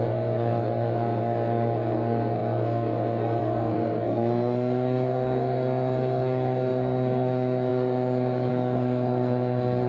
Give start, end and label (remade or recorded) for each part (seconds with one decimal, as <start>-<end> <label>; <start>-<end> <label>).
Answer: 0.0-9.9 remade